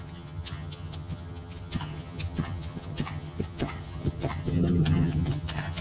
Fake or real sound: fake